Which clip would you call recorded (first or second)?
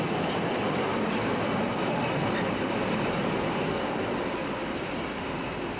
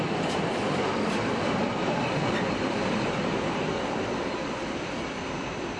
first